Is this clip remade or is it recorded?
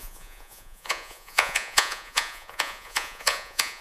remade